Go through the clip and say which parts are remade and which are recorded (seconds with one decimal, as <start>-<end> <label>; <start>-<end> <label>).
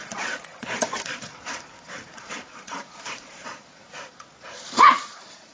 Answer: 0.0-5.5 remade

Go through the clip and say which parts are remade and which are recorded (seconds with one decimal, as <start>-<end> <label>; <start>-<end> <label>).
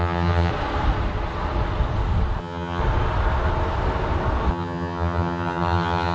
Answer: 0.0-0.5 remade; 0.5-2.4 recorded; 2.4-2.8 remade; 2.8-4.5 recorded; 4.5-6.1 remade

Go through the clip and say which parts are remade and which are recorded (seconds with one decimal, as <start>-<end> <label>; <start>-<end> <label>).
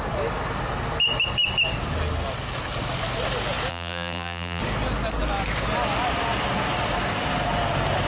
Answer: 0.0-3.7 recorded; 3.7-4.6 remade; 4.6-8.1 recorded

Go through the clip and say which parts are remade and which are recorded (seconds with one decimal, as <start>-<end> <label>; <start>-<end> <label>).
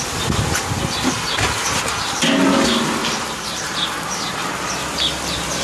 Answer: 0.0-3.0 recorded; 3.0-4.5 remade; 4.5-5.6 recorded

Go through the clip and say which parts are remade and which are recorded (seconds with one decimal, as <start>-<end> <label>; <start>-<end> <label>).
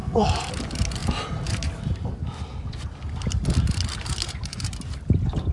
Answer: 0.0-0.5 remade; 0.5-5.5 recorded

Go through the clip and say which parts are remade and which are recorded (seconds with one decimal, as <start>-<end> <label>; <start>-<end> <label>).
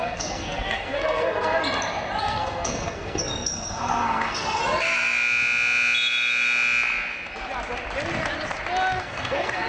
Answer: 0.0-1.6 remade; 1.6-2.2 recorded; 2.2-4.6 remade; 4.6-9.0 recorded; 9.0-9.7 remade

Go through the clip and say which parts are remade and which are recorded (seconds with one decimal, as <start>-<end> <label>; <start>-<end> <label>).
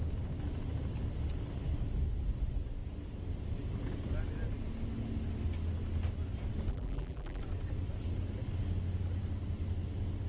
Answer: 0.0-6.7 recorded; 6.7-7.4 remade; 7.4-10.3 recorded